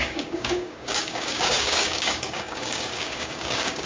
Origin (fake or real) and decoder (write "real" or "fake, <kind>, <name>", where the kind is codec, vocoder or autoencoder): fake, codec, DAC